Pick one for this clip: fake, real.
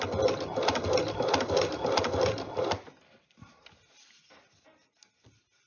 real